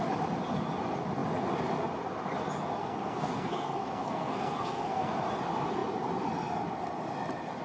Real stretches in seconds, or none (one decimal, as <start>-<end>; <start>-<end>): 0.0-2.8; 5.1-7.6